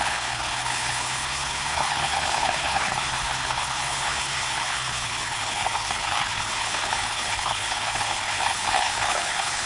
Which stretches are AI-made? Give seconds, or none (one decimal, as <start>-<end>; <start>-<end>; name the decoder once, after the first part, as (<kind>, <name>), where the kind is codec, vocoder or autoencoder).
0.0-9.7 (codec, HILCodec)